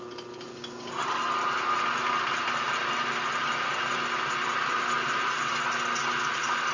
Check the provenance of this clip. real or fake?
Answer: real